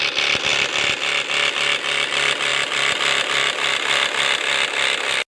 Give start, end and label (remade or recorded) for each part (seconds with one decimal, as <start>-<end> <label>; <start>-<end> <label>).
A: 0.0-5.3 recorded